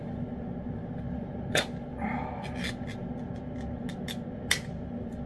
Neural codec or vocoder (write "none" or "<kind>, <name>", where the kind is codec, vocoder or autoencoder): none